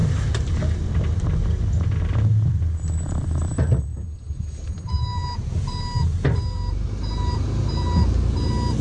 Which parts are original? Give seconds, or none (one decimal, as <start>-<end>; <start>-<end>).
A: 0.0-8.8